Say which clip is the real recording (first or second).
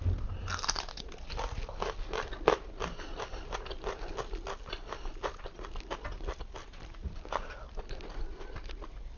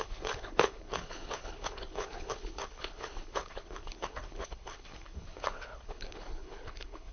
first